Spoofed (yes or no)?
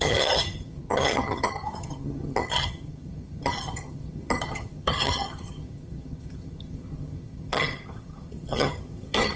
yes